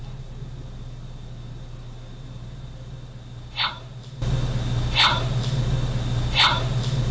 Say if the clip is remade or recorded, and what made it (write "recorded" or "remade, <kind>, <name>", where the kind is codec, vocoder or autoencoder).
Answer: recorded